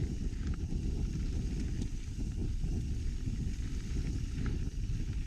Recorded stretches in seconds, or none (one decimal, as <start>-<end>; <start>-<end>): 1.2-5.3